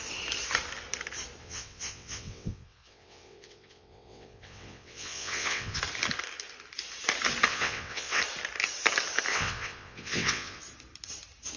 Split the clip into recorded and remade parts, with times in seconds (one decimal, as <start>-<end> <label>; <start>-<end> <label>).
0.0-1.4 recorded; 1.4-5.8 remade; 5.8-7.5 recorded; 7.5-8.2 remade; 8.2-9.3 recorded; 9.3-10.6 remade; 10.6-11.6 recorded